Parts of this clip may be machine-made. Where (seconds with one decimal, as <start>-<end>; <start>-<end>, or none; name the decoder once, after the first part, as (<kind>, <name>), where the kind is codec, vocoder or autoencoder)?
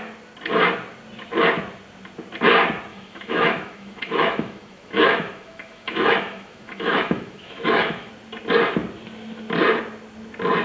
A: 2.9-8.1 (autoencoder, DAC-VAE)